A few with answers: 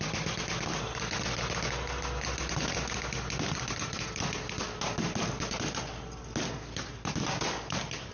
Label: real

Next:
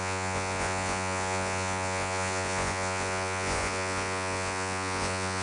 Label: fake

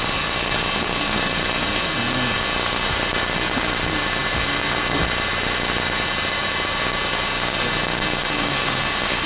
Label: real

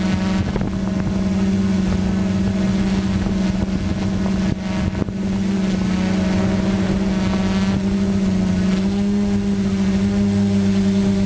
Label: real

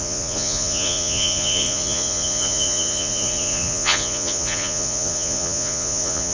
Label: fake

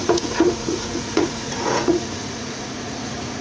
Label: fake